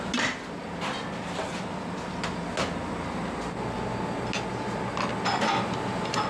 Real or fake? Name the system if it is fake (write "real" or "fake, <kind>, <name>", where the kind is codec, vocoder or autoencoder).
real